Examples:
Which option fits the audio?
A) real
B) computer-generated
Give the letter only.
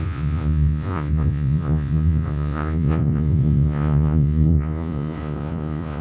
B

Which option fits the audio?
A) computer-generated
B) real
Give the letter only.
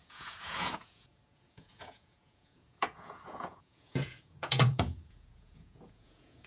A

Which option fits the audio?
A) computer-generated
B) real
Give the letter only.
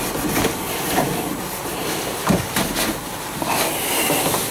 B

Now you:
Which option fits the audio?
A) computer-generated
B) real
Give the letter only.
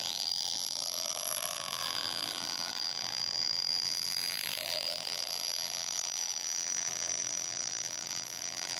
A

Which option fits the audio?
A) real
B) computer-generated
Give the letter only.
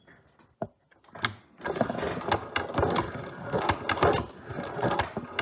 A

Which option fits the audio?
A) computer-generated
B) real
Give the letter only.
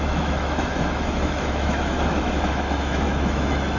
A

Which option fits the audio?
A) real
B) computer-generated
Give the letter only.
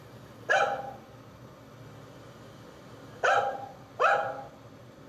A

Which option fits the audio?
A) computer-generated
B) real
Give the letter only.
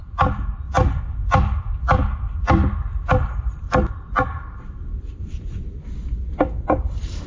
B